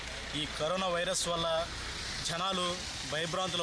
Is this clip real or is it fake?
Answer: real